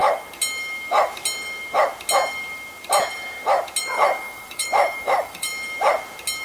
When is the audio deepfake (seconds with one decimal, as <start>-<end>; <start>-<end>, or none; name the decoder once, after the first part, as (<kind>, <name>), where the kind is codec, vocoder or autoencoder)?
3.8-5.5 (autoencoder, DAC-VAE)